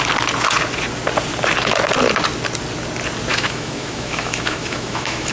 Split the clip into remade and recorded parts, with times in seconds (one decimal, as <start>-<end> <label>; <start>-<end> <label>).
0.0-3.3 recorded; 3.3-5.3 remade